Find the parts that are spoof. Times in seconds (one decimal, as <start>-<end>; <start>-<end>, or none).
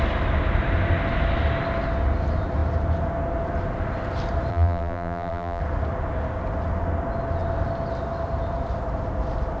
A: 4.5-5.6